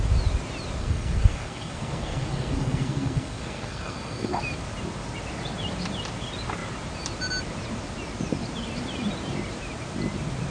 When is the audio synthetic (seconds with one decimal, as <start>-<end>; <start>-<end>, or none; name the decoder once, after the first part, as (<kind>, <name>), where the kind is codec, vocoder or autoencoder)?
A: 0.8-4.4 (codec, SNAC)